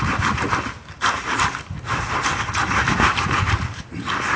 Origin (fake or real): real